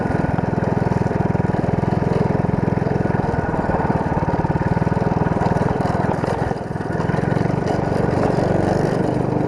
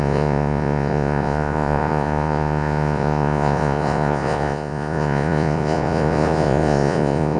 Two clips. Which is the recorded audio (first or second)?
first